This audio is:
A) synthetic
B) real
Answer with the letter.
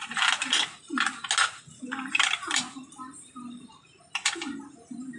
B